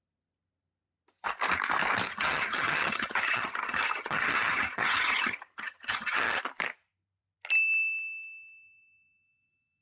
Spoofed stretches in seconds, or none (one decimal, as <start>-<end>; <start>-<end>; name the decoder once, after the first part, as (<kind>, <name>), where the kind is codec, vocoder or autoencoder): 2.1-6.4 (vocoder, HiFi-GAN)